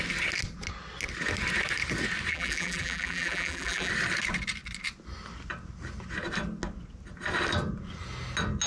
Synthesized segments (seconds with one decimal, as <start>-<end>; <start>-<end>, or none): 2.3-3.9